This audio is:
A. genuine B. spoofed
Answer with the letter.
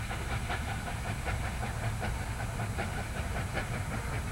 A